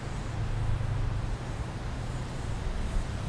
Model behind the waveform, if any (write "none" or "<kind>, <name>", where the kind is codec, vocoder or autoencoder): none